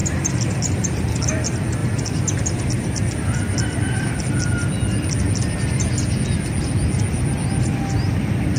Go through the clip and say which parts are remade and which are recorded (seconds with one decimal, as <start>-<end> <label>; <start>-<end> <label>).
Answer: 0.0-1.2 remade; 1.2-1.8 recorded; 1.8-4.2 remade; 4.2-8.6 recorded